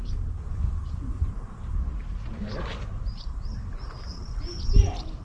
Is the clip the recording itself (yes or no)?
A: no